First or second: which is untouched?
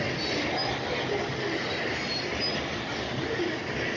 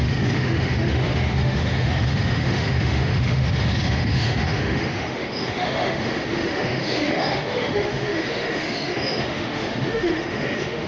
first